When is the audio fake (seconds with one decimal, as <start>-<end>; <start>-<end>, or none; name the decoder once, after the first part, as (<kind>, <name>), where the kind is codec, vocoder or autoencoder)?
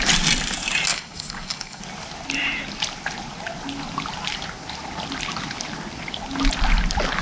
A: 0.9-1.8 (codec, DAC)